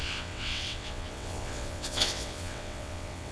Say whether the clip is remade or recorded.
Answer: remade